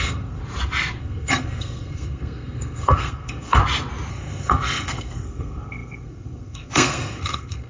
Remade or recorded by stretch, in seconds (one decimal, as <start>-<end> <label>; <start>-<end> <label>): 0.0-0.4 remade; 0.4-1.0 recorded; 1.0-3.6 remade; 3.6-4.1 recorded; 4.1-7.7 remade

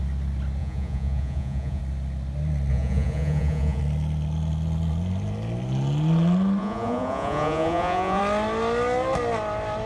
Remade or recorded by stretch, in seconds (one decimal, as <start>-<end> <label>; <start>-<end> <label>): 0.0-0.6 recorded; 0.6-1.8 remade; 1.8-2.7 recorded; 2.7-3.8 remade; 3.8-6.6 recorded; 6.6-8.2 remade; 8.2-9.9 recorded

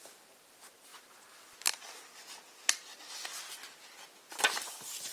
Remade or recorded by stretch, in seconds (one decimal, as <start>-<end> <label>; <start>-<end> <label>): 0.0-5.1 recorded

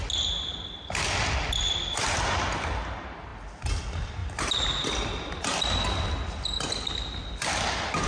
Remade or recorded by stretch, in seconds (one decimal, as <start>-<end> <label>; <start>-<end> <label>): 0.0-8.1 recorded

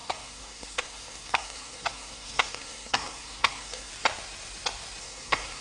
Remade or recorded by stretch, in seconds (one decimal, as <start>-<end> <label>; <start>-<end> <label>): 0.0-3.9 remade; 3.9-5.0 recorded; 5.0-5.6 remade